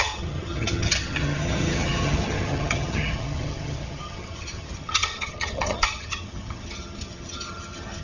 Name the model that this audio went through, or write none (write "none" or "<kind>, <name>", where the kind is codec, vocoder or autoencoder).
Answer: vocoder, HiFi-GAN